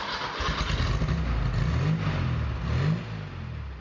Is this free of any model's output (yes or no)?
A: yes